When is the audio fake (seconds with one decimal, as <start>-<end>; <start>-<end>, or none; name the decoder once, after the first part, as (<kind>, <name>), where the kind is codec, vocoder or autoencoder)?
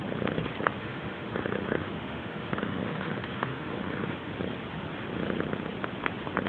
0.8-4.3 (autoencoder, DAC-VAE)